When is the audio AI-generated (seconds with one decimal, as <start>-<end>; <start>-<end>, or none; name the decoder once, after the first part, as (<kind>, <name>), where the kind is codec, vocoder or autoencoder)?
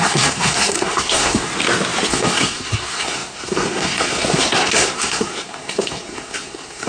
0.0-1.5 (codec, SNAC); 2.1-6.9